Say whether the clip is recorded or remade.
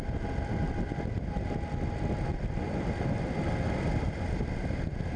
recorded